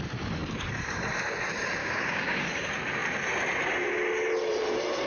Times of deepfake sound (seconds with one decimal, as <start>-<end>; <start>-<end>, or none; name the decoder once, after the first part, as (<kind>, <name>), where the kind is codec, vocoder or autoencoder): 1.8-2.4 (codec, DAC)